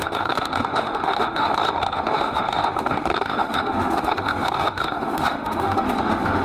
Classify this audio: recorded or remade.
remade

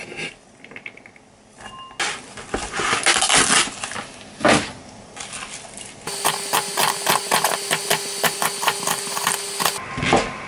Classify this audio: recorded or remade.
recorded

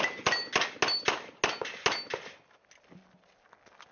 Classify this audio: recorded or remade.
recorded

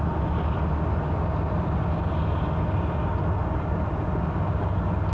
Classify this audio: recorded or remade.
recorded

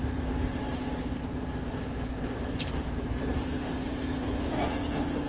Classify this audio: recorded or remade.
recorded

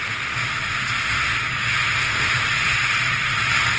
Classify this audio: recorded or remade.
recorded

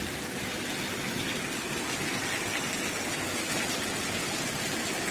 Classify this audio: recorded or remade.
recorded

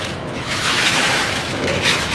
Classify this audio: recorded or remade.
remade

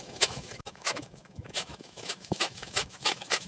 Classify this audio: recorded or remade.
remade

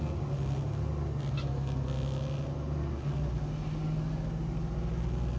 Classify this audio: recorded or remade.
recorded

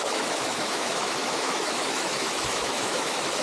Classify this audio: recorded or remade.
remade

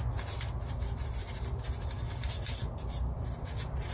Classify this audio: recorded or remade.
recorded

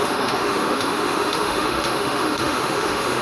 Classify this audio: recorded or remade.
remade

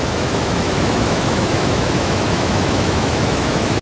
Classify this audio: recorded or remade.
remade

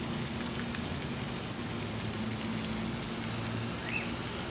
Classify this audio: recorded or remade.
recorded